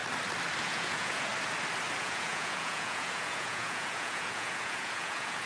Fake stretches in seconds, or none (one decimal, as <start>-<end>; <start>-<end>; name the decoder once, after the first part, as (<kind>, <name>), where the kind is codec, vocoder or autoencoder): 0.6-1.3 (vocoder, Vocos); 2.0-5.5